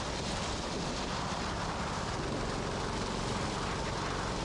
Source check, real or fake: real